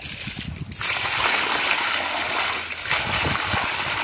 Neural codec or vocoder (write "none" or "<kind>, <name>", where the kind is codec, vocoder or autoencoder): none